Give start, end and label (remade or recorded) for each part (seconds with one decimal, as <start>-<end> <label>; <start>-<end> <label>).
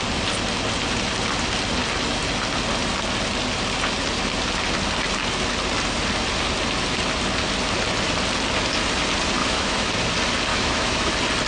0.0-9.4 recorded; 9.4-9.9 remade; 9.9-10.5 recorded; 10.5-11.1 remade; 11.1-11.5 recorded